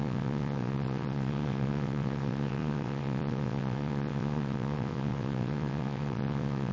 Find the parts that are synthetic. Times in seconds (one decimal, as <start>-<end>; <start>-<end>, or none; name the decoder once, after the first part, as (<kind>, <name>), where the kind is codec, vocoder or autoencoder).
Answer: 0.0-6.7 (vocoder, WaveNeXt)